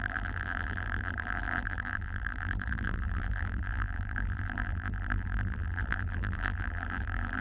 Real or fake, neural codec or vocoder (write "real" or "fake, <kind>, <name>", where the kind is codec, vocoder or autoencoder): fake, vocoder, BigVGAN v2